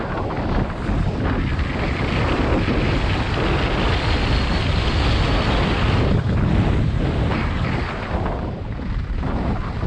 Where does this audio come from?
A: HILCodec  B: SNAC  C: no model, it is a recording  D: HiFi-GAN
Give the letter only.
C